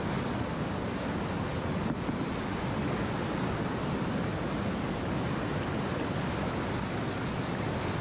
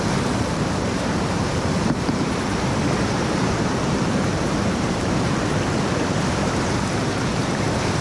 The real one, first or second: first